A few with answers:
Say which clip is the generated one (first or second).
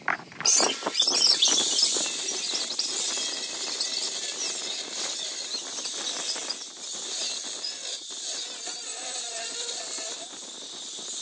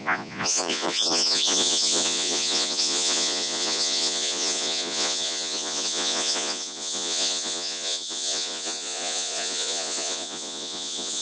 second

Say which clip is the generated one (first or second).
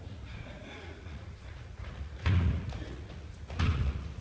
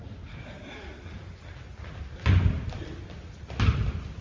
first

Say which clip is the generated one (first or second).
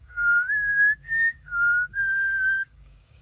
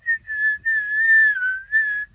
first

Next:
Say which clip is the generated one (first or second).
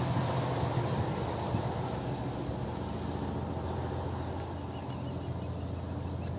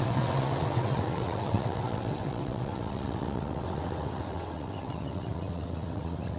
second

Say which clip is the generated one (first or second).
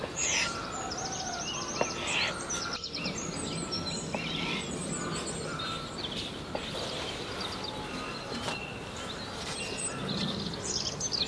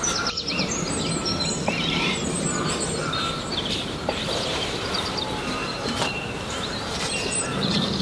second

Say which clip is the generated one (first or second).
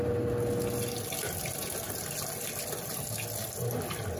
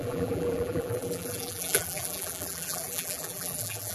second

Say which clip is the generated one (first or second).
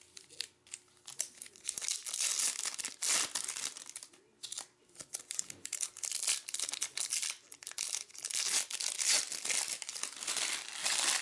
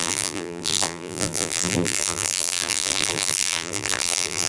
second